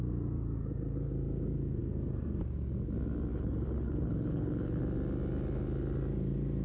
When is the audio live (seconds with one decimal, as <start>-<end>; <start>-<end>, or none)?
0.0-3.3; 4.8-6.6